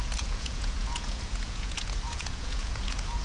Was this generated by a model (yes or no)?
yes